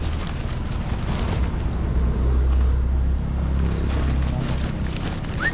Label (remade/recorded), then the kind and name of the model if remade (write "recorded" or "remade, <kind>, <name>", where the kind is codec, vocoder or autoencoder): recorded